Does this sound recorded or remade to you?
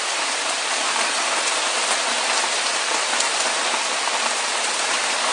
recorded